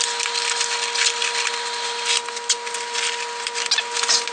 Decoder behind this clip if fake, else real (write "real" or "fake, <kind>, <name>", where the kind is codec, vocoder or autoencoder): real